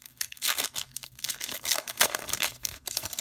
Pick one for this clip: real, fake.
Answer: fake